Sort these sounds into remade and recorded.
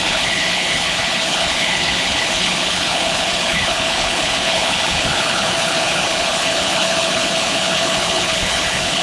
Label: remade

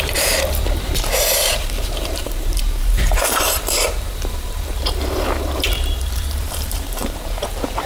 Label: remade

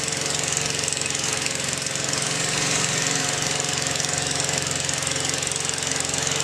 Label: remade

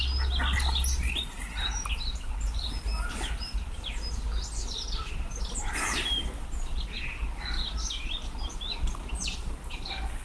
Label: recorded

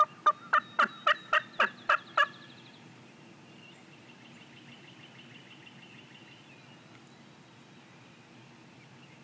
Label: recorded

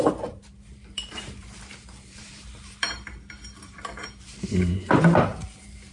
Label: remade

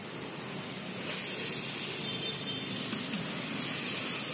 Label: recorded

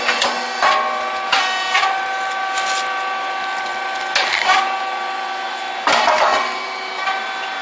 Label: recorded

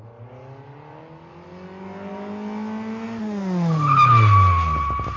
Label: recorded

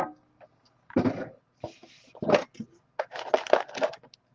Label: recorded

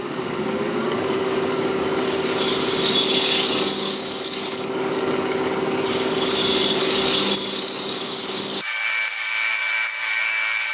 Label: remade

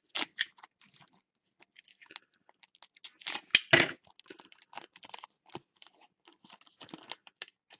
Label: recorded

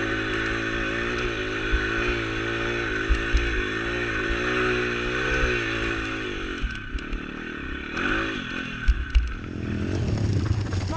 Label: recorded